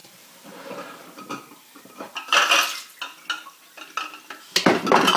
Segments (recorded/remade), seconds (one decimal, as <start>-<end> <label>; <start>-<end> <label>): 0.0-2.5 remade; 2.5-5.2 recorded

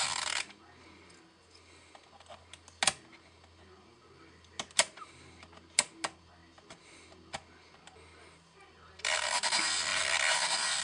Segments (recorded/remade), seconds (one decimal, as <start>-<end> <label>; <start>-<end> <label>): 0.0-9.9 recorded; 9.9-10.8 remade

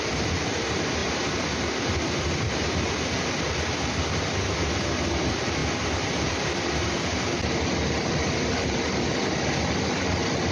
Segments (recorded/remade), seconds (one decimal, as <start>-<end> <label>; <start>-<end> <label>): 0.0-1.0 remade; 1.0-5.0 recorded; 5.0-5.6 remade; 5.6-6.7 recorded; 6.7-10.5 remade

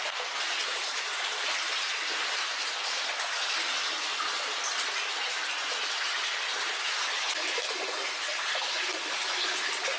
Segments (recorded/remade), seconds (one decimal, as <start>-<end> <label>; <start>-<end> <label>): 0.0-0.6 recorded; 0.6-1.3 remade; 1.3-8.3 recorded; 8.3-8.9 remade; 8.9-10.0 recorded

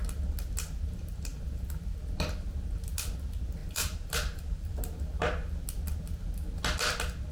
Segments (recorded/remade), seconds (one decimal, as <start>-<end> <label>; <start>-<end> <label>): 0.0-3.6 recorded; 3.6-4.8 remade; 4.8-7.3 recorded

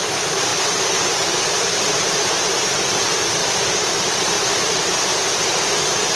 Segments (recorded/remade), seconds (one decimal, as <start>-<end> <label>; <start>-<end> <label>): 0.0-0.5 recorded; 0.5-2.3 remade; 2.3-3.4 recorded; 3.4-4.1 remade; 4.1-4.7 recorded; 4.7-5.7 remade; 5.7-6.2 recorded